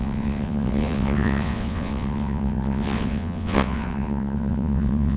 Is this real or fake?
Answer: fake